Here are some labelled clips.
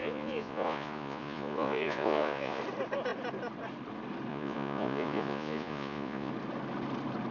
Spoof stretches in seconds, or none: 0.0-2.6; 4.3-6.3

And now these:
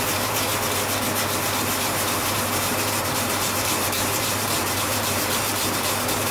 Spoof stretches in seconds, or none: 0.0-0.5; 1.4-6.3

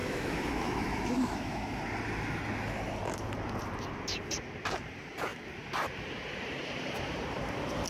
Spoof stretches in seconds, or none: 0.0-1.8

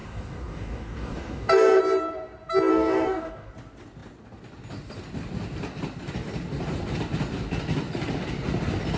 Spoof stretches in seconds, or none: 0.0-1.8; 2.7-3.5

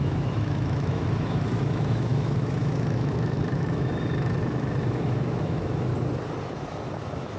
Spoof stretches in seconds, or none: 0.0-5.9; 6.5-7.4

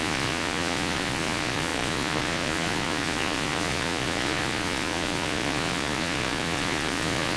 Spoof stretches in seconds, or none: 0.0-7.4

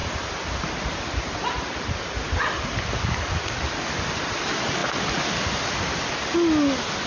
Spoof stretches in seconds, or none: none